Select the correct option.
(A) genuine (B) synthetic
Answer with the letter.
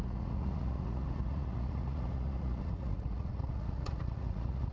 B